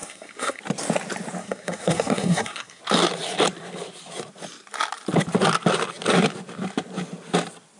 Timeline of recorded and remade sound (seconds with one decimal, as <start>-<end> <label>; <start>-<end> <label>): 0.0-0.6 remade; 0.6-1.4 recorded; 1.4-2.8 remade; 2.8-7.8 recorded